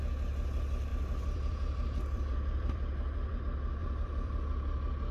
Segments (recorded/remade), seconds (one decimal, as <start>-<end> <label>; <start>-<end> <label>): 0.0-0.9 recorded; 0.9-3.4 remade; 3.4-3.8 recorded; 3.8-4.5 remade; 4.5-5.1 recorded